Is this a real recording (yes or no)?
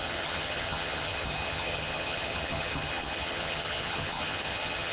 no